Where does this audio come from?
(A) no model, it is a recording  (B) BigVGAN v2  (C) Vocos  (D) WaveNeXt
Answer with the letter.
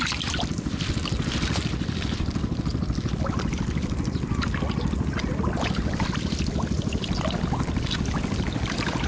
B